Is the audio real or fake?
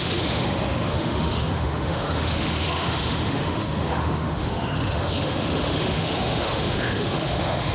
fake